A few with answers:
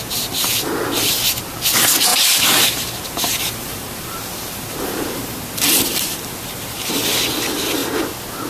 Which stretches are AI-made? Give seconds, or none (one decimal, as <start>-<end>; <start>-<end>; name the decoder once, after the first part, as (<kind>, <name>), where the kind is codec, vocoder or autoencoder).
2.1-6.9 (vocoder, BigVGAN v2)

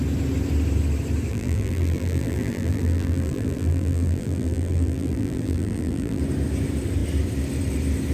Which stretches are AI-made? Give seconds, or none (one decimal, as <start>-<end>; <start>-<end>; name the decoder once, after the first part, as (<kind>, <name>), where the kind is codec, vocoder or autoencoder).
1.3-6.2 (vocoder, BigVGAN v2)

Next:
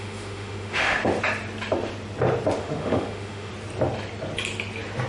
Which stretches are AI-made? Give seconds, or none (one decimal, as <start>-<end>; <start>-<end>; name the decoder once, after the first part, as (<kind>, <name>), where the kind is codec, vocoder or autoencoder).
0.0-1.0 (autoencoder, DAC-VAE); 2.6-3.5

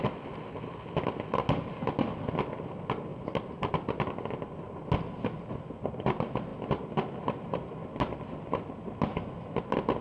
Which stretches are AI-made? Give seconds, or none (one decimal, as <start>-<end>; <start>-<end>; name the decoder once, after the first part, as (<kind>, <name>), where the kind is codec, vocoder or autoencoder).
3.1-3.7 (vocoder, BigVGAN v2); 7.8-8.5